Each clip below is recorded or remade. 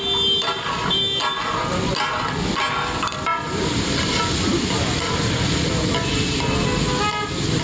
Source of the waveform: recorded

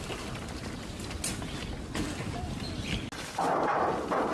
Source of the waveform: recorded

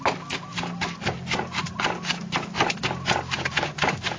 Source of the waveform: recorded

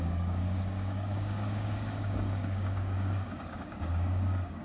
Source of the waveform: remade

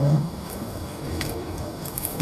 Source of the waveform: remade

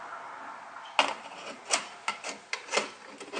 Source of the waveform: recorded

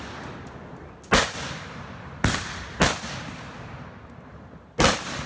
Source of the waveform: recorded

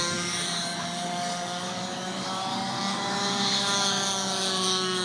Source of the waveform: remade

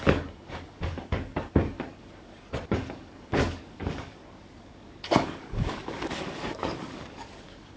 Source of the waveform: remade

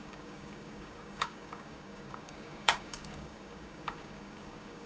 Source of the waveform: remade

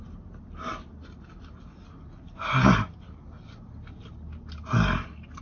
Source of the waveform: recorded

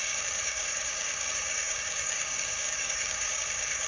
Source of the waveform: remade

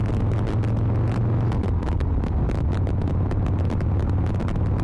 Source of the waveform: recorded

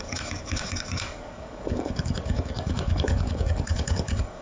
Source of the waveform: remade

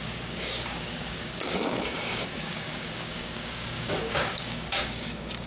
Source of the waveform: remade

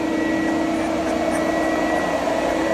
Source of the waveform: recorded